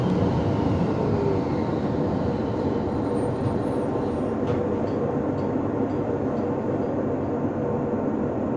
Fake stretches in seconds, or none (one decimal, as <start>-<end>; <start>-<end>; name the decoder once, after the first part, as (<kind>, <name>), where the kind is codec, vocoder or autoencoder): 1.7-3.4 (vocoder, BigVGAN v2)